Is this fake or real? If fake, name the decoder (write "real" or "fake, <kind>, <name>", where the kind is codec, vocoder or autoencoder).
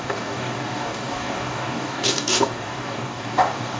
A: fake, codec, DAC